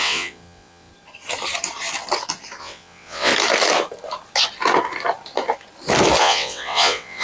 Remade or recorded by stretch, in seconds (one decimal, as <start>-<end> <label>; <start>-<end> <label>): 0.0-0.9 remade; 0.9-2.6 recorded; 2.6-3.3 remade; 3.3-6.2 recorded; 6.2-7.2 remade